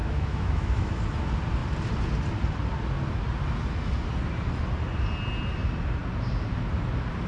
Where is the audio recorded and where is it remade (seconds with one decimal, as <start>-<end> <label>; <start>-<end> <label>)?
0.0-1.0 remade; 1.0-7.3 recorded